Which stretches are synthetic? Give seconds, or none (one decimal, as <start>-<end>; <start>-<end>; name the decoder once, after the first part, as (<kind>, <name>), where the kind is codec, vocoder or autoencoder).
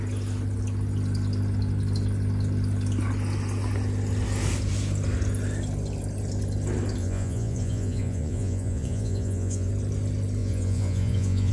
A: 7.0-9.7 (vocoder, Vocos); 10.4-11.5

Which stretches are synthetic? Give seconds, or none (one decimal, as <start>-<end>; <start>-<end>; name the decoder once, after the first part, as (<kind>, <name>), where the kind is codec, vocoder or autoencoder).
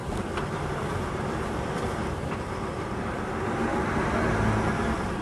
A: 0.0-3.7 (vocoder, BigVGAN v2); 4.8-5.2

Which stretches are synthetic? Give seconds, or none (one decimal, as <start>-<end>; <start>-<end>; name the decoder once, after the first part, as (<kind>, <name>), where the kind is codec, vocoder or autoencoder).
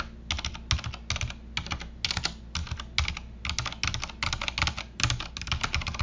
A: none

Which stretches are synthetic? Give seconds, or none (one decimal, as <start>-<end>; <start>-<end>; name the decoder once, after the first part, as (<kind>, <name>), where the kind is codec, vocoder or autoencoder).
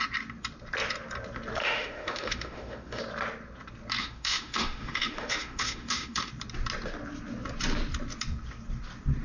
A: 1.6-3.0 (autoencoder, DAC-VAE); 4.0-6.3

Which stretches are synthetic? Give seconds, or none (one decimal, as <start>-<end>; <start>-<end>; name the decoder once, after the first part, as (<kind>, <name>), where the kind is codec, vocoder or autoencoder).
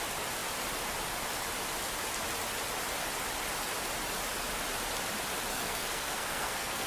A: 5.5-6.9 (codec, SNAC)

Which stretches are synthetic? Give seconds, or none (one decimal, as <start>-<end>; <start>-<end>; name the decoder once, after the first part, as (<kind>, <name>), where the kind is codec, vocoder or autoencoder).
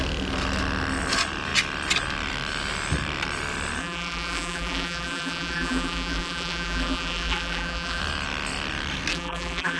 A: 3.8-8.0 (vocoder, BigVGAN v2); 9.1-9.8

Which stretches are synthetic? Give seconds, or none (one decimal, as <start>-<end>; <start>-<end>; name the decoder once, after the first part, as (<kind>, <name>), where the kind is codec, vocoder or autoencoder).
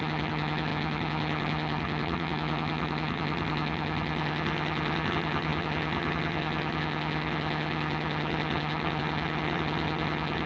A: 0.0-10.5 (vocoder, HiFi-GAN)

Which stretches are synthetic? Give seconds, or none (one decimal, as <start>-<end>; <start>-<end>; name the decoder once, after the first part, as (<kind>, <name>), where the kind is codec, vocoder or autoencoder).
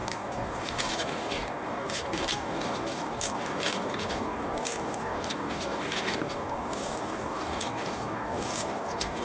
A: 0.0-9.2 (codec, DAC)